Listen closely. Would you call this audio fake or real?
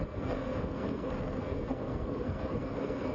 fake